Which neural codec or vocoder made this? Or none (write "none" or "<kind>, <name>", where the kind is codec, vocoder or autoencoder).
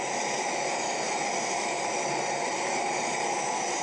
none